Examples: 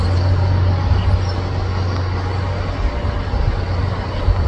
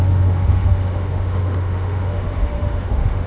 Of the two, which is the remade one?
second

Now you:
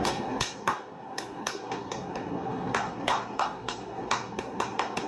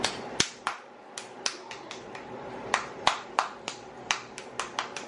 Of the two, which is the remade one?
first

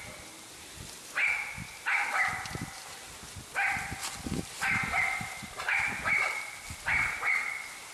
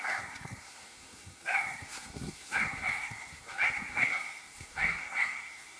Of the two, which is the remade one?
second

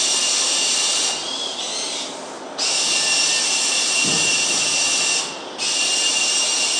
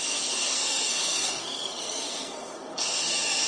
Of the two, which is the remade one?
second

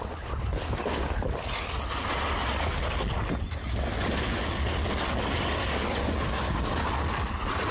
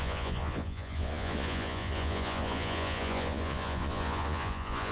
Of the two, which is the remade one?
second